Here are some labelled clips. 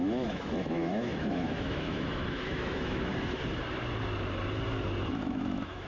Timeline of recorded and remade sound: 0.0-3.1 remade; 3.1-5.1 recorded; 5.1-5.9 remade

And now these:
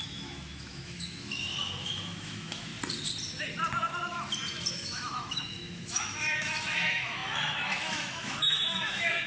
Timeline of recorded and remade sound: 0.0-2.7 remade; 2.7-4.7 recorded; 4.7-9.3 remade

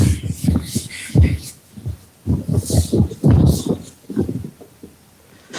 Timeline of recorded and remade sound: 0.0-0.4 recorded; 0.4-1.7 remade; 1.7-5.6 recorded

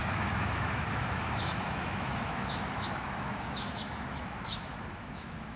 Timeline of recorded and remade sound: 0.0-5.6 remade

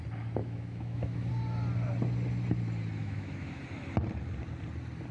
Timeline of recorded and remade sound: 0.0-0.4 recorded; 0.4-1.3 remade; 1.3-3.0 recorded; 3.0-3.6 remade; 3.6-5.1 recorded

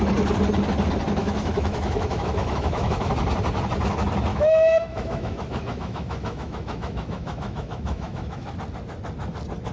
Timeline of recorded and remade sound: 0.0-1.2 recorded; 1.2-3.1 remade; 3.1-4.3 recorded; 4.3-8.5 remade; 8.5-9.7 recorded

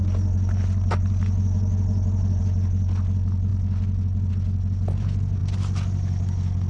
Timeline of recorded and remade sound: 0.0-6.7 recorded

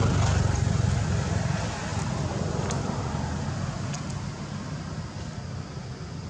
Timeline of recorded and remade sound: 0.0-6.3 recorded